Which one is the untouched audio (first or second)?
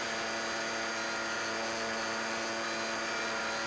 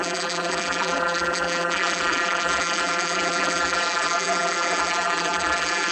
first